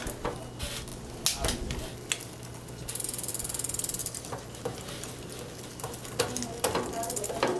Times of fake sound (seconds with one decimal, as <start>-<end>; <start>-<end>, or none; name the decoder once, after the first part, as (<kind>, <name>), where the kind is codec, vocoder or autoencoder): 4.0-5.9 (vocoder, BigVGAN v2)